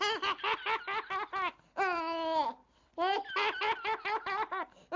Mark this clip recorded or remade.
recorded